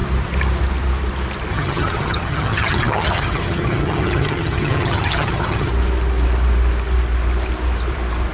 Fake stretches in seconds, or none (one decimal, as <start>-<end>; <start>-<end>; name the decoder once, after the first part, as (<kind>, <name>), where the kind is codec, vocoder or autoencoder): 1.5-5.7 (vocoder, HiFi-GAN)